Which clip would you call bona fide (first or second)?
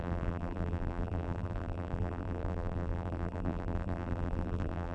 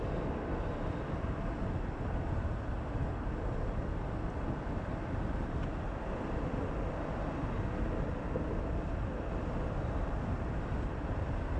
second